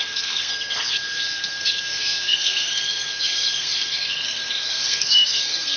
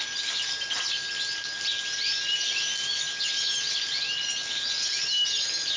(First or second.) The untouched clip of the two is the second